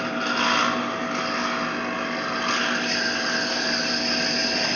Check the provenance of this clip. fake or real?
real